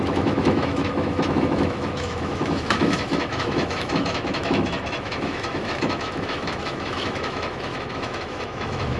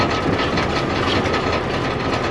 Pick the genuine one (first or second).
second